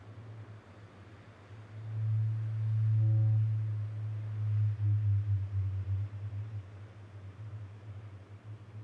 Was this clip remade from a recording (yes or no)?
no